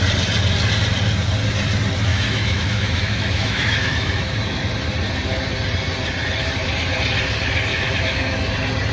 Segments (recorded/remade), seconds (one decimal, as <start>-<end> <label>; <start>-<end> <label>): 0.0-2.1 recorded; 2.1-4.7 remade; 4.7-7.7 recorded; 7.7-8.5 remade; 8.5-8.9 recorded

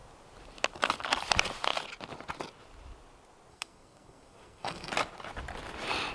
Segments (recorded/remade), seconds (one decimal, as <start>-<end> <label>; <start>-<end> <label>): 0.0-3.5 recorded; 3.5-4.9 remade; 4.9-6.1 recorded

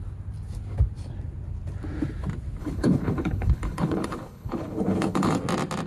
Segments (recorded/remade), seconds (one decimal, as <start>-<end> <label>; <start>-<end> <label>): 0.0-2.6 recorded; 2.6-5.4 remade; 5.4-5.9 recorded

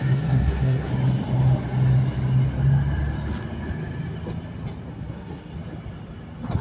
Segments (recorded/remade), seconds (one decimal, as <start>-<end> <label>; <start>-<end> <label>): 0.0-0.9 remade; 0.9-4.9 recorded; 4.9-5.5 remade; 5.5-6.6 recorded